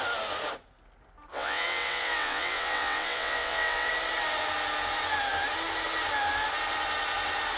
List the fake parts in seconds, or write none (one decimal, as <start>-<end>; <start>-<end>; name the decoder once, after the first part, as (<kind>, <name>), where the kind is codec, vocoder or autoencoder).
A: 1.3-3.9 (vocoder, WaveNeXt)